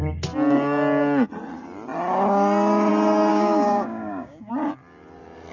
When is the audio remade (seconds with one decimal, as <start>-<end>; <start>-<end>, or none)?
3.3-4.5